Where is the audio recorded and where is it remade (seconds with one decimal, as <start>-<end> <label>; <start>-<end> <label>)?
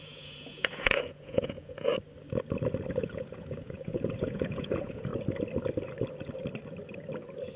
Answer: 0.0-1.9 remade; 1.9-2.9 recorded; 2.9-5.1 remade; 5.1-7.6 recorded